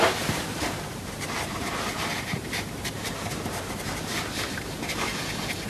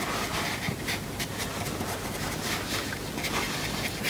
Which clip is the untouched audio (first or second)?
second